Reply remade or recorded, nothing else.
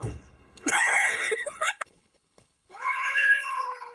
remade